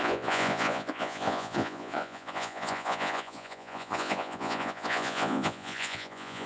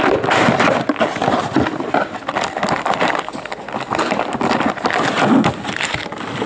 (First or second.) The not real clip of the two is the first